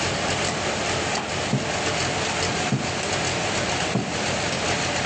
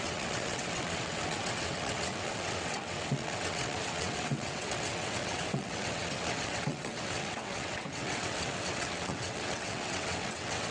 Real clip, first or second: first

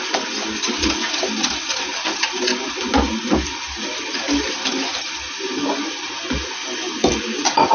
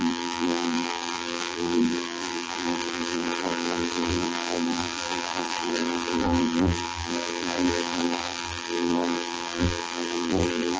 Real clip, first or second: first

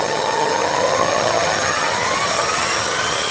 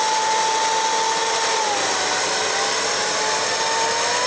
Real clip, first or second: second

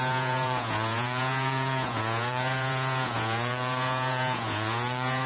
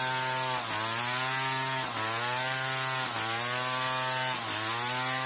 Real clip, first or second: second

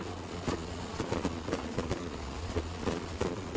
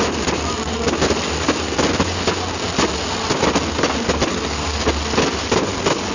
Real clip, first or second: second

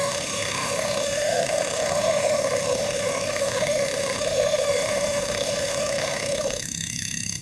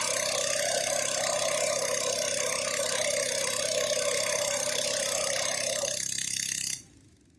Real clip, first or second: second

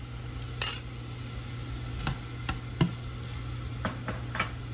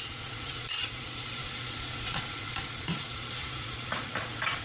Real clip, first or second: first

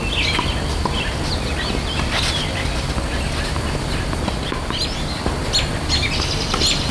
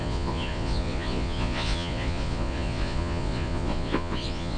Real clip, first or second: first